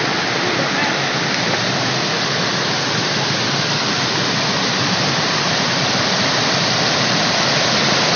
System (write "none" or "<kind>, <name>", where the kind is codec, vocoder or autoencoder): none